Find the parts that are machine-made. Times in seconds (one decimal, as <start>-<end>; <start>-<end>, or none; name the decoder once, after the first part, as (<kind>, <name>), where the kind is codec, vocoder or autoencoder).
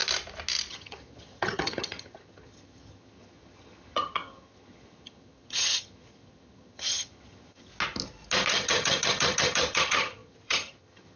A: 0.7-7.7 (vocoder, HiFi-GAN); 8.5-11.2